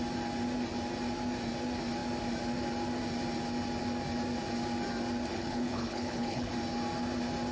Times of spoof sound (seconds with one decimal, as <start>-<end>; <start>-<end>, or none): 5.3-6.5